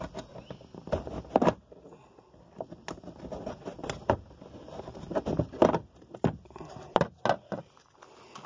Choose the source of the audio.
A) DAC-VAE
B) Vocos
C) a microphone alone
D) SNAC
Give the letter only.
C